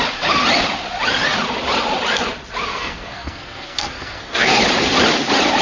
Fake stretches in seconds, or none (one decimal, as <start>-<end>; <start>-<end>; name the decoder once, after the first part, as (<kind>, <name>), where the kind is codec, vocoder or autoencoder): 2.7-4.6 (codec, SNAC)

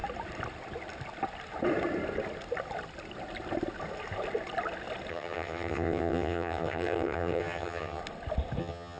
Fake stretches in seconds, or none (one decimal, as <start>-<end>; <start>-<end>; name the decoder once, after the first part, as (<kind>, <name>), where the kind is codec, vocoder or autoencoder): 5.1-8.0 (vocoder, HiFi-GAN); 8.6-9.0

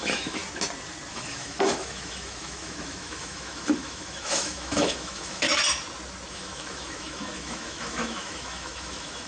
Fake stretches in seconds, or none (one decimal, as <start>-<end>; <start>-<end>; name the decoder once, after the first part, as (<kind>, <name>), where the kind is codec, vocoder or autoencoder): 0.0-0.4 (autoencoder, DAC-VAE); 1.1-5.5; 6.3-9.3

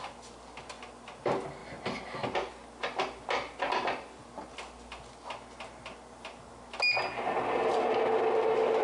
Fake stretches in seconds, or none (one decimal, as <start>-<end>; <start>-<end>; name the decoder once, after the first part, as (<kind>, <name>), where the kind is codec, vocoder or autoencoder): none